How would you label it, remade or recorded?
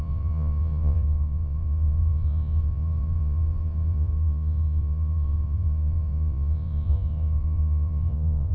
remade